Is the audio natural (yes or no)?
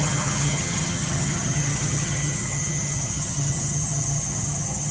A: no